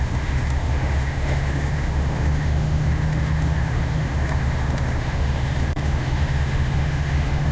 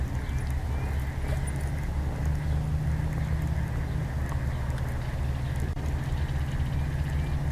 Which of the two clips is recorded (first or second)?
second